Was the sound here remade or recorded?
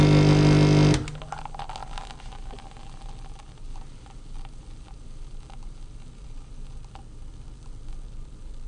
recorded